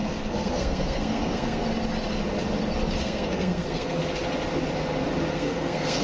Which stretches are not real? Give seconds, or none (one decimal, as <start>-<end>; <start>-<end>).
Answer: 0.0-1.6; 3.0-4.0; 5.3-6.0